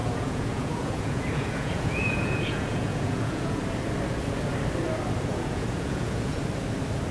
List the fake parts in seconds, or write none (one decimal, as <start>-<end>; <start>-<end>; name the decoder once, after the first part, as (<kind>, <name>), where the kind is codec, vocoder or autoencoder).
0.0-3.6 (vocoder, Vocos); 5.3-6.4